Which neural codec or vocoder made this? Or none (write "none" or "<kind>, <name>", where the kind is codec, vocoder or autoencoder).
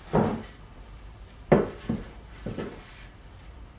none